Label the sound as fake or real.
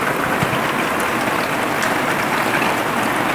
real